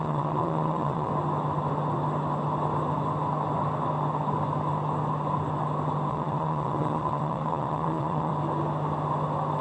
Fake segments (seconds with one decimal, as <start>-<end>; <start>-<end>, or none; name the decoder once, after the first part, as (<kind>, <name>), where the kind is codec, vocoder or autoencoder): 0.0-1.1 (vocoder, Vocos); 6.1-8.3